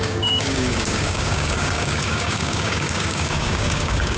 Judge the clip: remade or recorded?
remade